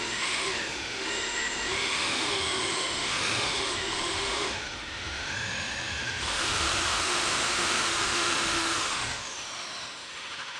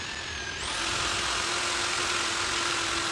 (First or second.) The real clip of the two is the second